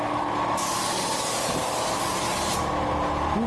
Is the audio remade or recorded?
recorded